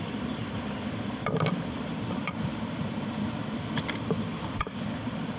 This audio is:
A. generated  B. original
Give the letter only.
A